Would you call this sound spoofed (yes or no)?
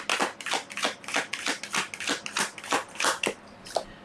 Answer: no